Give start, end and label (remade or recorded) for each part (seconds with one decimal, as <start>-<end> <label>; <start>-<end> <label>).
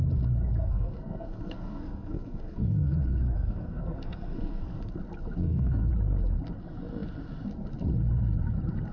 0.0-0.6 recorded; 0.6-4.9 remade; 4.9-5.4 recorded; 5.4-5.9 remade; 5.9-8.9 recorded